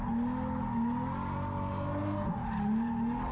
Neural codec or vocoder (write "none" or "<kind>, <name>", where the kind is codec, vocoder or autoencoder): none